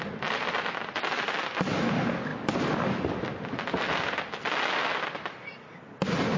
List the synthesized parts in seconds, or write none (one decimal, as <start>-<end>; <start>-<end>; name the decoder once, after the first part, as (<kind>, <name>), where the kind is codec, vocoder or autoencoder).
none